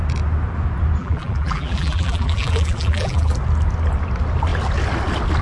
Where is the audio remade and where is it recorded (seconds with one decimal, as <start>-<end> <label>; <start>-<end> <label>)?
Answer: 0.0-1.0 recorded; 1.0-3.3 remade; 3.3-5.4 recorded